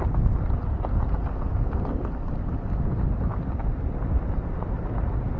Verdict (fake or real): real